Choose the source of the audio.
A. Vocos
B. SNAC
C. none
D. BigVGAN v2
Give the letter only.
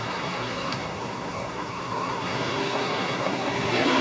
B